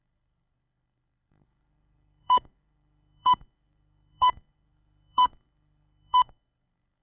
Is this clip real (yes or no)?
no